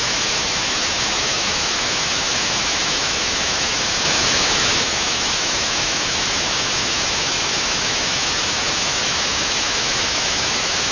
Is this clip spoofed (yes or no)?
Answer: yes